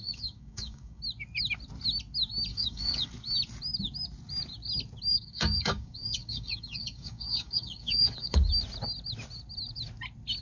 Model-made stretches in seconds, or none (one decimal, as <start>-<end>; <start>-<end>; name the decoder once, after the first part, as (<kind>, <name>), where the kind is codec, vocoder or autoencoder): 0.0-1.0 (codec, DAC); 2.5-3.1; 5.1-8.5